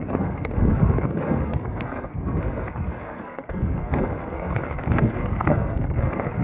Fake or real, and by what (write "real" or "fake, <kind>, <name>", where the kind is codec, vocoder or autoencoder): fake, codec, SNAC